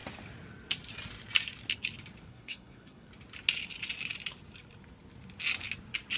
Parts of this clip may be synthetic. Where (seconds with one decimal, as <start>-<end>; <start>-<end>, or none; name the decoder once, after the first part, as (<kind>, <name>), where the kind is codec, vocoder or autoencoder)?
2.3-3.1 (codec, SNAC)